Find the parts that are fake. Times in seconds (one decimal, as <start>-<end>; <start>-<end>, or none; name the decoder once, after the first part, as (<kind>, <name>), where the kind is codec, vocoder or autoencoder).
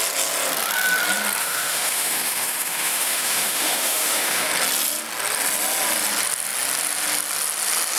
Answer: 1.4-4.5 (autoencoder, DAC-VAE)